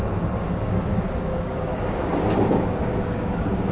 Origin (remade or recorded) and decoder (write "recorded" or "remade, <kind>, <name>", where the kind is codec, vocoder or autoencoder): remade, codec, DAC